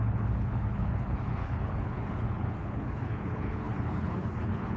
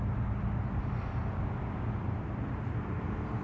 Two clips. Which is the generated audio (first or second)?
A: first